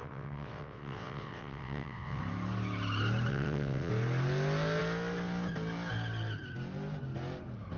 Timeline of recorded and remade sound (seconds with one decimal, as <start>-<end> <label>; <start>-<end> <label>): 0.0-2.2 remade; 2.2-3.3 recorded; 3.3-3.9 remade; 3.9-7.8 recorded